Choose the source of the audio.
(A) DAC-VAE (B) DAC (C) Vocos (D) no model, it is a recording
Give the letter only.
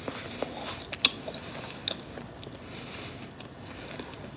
D